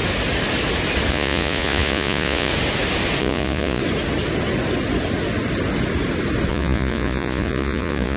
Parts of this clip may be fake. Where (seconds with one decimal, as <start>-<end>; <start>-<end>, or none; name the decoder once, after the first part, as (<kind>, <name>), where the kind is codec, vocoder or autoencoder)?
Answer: 1.1-2.5 (vocoder, Vocos); 3.2-3.8; 6.5-8.2